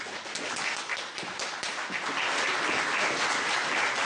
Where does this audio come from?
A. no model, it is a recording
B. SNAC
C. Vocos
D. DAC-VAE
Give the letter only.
A